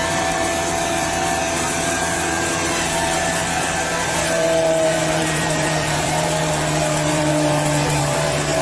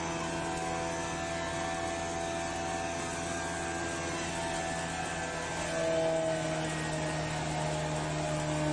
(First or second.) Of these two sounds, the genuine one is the second